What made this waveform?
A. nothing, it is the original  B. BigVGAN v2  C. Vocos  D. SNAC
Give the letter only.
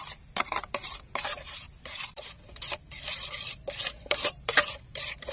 B